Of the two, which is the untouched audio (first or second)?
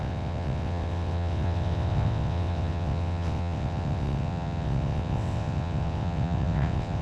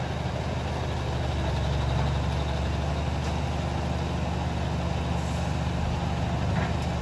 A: second